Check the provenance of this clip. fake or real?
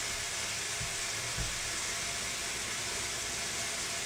real